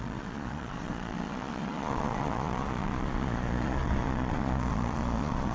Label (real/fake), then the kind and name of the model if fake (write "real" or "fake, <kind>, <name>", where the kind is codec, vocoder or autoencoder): fake, vocoder, Vocos